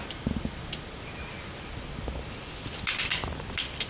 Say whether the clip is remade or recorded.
recorded